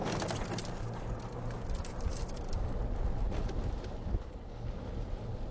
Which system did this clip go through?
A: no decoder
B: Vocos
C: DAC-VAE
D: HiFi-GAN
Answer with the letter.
A